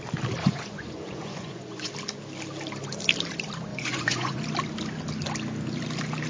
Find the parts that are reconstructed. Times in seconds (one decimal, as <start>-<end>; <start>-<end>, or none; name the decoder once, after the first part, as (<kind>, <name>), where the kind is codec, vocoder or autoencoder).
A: 0.4-1.9 (vocoder, Vocos); 3.7-4.4